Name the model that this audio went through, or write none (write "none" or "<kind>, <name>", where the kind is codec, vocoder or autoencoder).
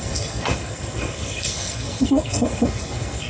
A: codec, SNAC